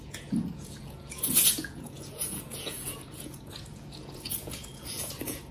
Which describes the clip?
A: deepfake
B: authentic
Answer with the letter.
A